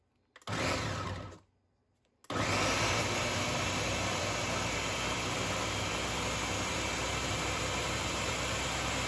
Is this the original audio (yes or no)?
yes